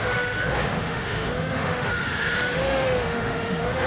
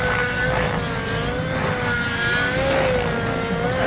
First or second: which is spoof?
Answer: first